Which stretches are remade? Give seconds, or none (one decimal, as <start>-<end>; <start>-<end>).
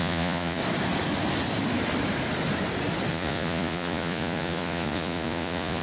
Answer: 0.0-0.6; 3.1-5.8